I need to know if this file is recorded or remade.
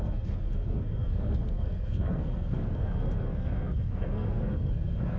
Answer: remade